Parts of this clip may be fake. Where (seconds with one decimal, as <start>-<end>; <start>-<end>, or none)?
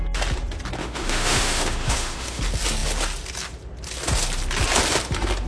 0.8-2.4